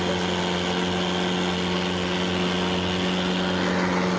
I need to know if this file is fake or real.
real